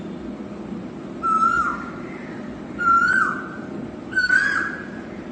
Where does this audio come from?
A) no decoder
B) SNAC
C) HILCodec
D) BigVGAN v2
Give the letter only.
A